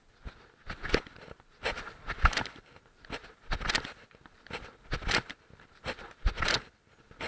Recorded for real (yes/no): yes